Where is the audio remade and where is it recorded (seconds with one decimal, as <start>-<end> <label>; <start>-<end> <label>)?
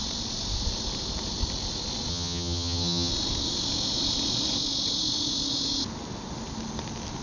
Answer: 0.0-2.1 recorded; 2.1-3.1 remade; 3.1-7.2 recorded